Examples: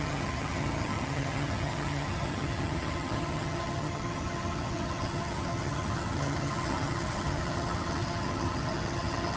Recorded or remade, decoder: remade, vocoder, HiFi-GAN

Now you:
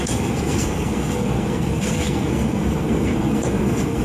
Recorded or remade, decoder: remade, codec, SNAC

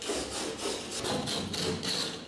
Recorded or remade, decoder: recorded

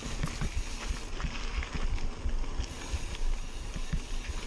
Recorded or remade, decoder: recorded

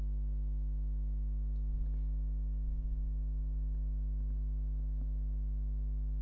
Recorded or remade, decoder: recorded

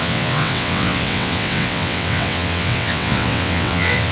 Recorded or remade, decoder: remade, vocoder, WaveNeXt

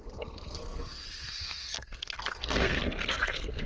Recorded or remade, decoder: remade, codec, SNAC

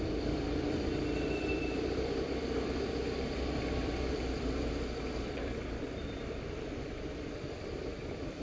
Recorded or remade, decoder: remade, vocoder, BigVGAN v2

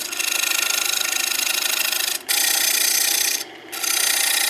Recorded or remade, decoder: recorded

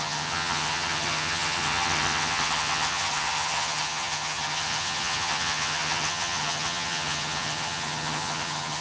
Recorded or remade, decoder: remade, vocoder, HiFi-GAN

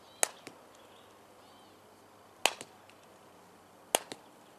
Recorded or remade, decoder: recorded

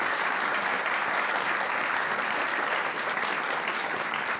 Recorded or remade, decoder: recorded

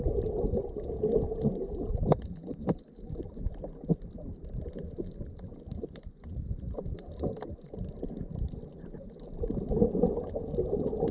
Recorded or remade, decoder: recorded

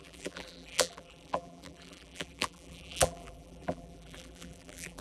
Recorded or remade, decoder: remade, vocoder, BigVGAN v2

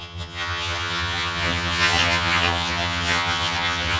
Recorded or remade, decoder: remade, vocoder, HiFi-GAN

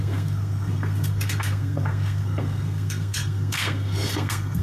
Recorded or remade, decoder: remade, codec, SNAC